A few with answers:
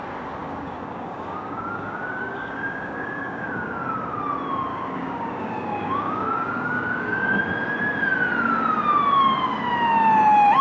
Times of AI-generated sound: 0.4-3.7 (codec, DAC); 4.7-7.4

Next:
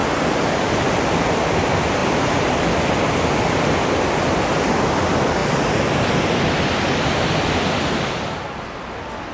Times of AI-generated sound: none

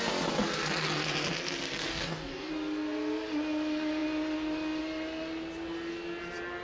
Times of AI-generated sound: 1.9-2.5 (codec, DAC)

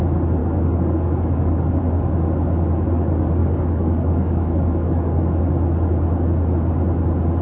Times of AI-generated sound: 0.4-1.8 (codec, DAC); 3.4-5.4

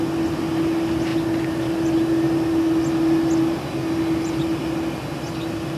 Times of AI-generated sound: none

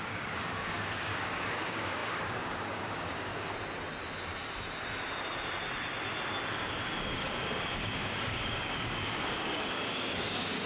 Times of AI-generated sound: 0.0-3.3 (codec, DAC); 6.5-10.7

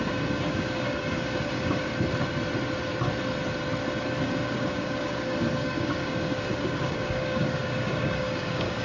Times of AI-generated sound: 0.0-1.9 (codec, DAC); 4.2-8.8

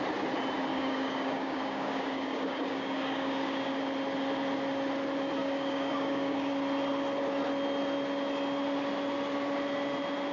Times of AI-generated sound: 0.7-3.7 (codec, DAC); 5.4-6.5